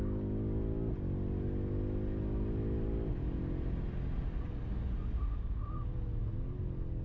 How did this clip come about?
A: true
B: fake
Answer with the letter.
A